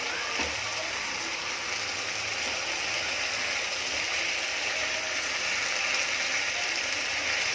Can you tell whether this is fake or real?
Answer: real